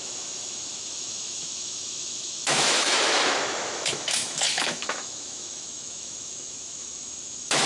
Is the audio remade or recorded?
remade